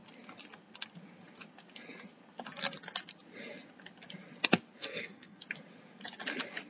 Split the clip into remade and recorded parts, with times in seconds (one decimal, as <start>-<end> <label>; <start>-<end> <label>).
0.0-4.8 recorded; 4.8-5.4 remade; 5.4-6.7 recorded